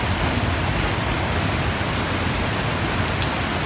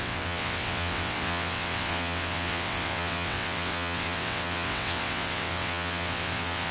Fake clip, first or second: second